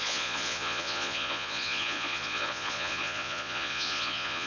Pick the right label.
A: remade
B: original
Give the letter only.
A